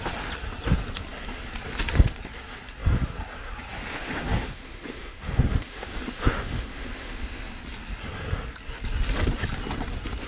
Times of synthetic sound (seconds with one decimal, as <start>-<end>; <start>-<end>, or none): 3.9-7.6